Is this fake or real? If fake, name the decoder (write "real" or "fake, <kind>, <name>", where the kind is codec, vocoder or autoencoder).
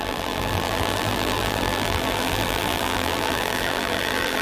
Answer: fake, vocoder, BigVGAN v2